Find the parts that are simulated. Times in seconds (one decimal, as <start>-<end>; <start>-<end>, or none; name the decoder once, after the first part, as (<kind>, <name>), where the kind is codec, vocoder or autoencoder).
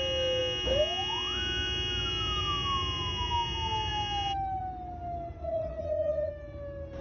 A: 5.4-6.3 (vocoder, Vocos)